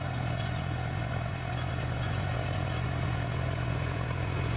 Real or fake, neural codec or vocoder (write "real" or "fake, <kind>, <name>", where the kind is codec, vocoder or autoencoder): fake, vocoder, Vocos